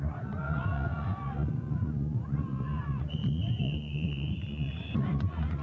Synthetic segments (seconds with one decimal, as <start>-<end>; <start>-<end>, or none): 0.0-5.6